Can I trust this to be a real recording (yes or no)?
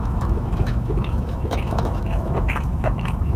no